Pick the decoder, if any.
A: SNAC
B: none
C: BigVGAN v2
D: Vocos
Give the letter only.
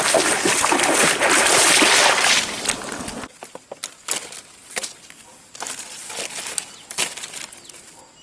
B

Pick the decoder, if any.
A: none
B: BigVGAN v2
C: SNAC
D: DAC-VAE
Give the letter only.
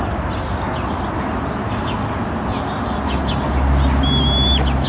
A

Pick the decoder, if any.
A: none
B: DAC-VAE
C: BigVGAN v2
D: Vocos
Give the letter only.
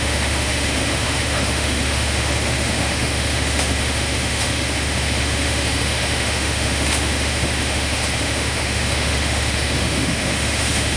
B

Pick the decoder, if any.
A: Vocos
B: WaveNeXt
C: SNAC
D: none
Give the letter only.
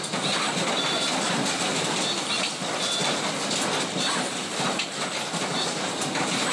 D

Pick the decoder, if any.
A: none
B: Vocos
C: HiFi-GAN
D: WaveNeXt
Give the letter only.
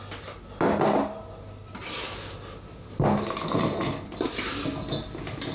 A